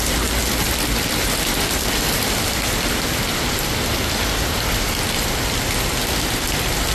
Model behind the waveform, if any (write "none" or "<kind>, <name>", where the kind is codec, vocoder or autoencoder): none